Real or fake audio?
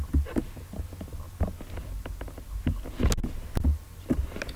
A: real